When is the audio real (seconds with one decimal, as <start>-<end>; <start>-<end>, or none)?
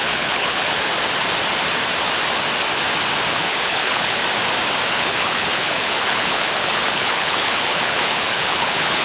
0.9-3.3; 4.2-4.9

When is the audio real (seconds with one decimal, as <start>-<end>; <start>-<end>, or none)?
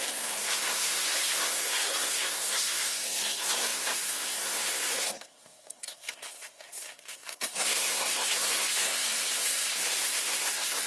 none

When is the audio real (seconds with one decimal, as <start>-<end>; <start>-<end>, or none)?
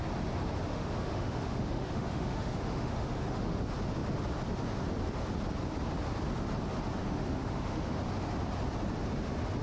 0.0-0.7; 3.6-7.0; 8.0-9.6